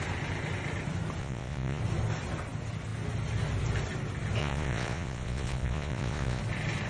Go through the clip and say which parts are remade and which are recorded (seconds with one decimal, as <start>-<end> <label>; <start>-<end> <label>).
0.0-1.2 recorded; 1.2-1.8 remade; 1.8-4.4 recorded; 4.4-6.4 remade; 6.4-6.9 recorded